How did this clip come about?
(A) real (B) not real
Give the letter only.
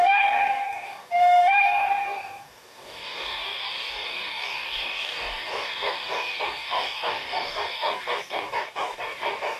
B